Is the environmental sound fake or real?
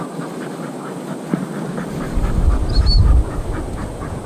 real